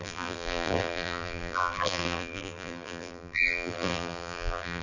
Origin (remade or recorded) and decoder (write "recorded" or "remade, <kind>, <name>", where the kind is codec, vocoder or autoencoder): remade, vocoder, BigVGAN v2